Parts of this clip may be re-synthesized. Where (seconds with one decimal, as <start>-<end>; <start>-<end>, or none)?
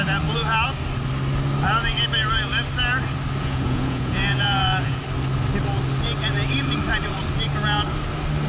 3.4-5.0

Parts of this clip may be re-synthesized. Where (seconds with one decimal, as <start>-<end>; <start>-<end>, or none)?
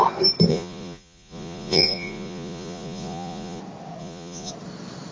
0.5-3.6; 4.0-4.5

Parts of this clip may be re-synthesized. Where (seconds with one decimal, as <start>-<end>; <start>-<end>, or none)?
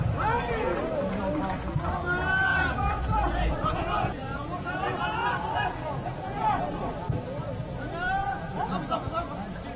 2.5-6.6; 8.2-8.9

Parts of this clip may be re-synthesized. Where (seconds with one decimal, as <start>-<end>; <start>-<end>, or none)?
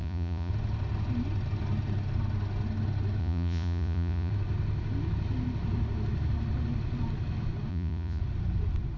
0.0-0.5; 3.2-4.3; 7.7-8.2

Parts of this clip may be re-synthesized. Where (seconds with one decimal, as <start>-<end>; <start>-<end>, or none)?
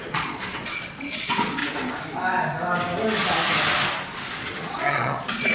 0.0-1.6; 4.3-5.5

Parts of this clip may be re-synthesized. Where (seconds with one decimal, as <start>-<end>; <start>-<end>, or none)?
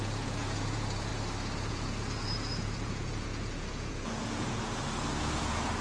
0.0-1.1; 1.7-5.8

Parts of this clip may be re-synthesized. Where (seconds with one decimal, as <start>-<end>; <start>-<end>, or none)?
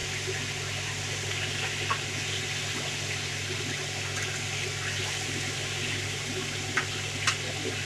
none